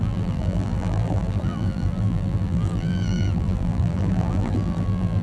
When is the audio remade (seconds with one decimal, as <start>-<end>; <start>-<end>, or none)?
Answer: 0.0-5.2